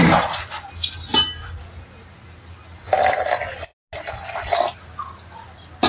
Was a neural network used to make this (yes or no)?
no